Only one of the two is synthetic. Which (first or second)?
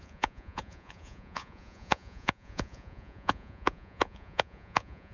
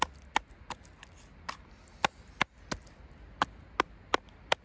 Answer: first